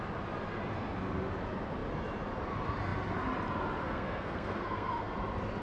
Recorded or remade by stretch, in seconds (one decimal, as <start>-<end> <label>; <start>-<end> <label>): 0.0-3.8 recorded; 3.8-5.1 remade; 5.1-5.6 recorded